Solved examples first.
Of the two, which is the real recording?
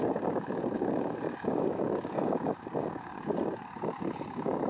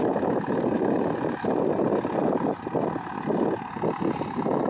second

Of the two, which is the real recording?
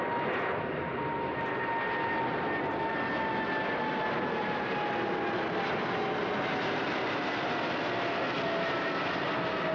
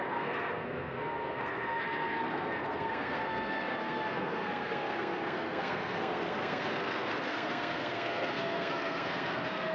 first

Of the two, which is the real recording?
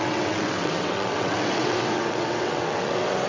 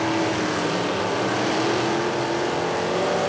second